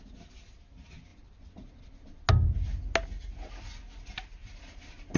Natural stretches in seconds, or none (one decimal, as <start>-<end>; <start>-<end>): 0.0-5.2